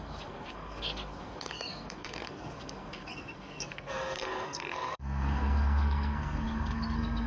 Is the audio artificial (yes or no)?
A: yes